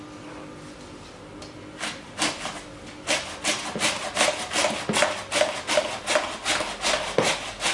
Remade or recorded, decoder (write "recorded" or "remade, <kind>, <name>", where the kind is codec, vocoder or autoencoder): recorded